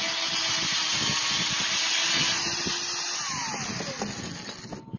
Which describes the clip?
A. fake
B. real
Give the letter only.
B